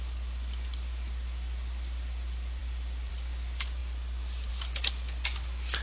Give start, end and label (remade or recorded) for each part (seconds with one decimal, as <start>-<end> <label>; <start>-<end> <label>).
0.0-5.8 recorded